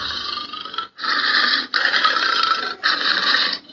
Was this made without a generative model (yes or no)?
yes